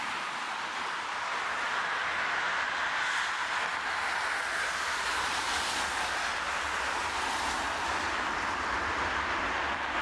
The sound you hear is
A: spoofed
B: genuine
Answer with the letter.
B